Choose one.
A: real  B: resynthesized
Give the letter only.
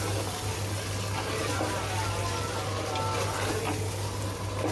A